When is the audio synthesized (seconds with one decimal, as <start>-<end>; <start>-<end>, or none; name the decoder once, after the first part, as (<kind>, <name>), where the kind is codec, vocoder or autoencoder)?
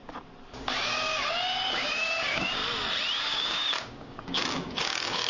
0.6-2.6 (codec, DAC); 3.2-5.3